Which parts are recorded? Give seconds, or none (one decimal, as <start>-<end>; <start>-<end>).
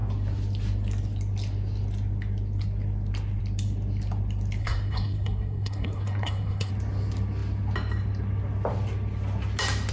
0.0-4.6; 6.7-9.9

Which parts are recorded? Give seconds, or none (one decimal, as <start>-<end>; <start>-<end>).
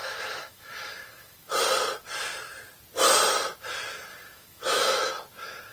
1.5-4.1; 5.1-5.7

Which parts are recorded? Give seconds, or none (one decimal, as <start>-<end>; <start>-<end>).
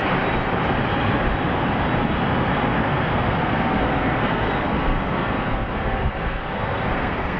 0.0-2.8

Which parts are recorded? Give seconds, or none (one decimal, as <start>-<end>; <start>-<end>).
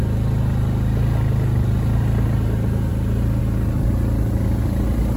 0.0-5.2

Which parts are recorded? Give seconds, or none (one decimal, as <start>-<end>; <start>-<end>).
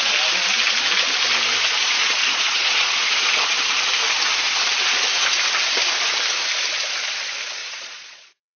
0.0-1.8; 3.3-7.6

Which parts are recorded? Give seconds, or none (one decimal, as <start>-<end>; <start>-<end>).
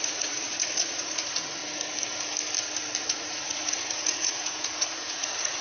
1.6-3.0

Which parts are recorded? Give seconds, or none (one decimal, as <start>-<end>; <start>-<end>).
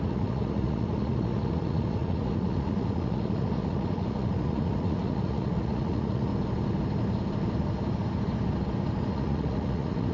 6.3-9.1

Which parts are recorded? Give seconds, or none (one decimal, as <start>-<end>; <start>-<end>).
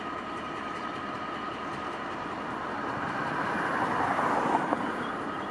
none